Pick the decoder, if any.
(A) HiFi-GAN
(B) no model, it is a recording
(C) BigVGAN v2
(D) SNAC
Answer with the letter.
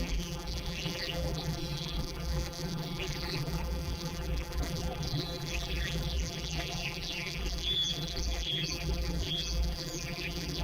C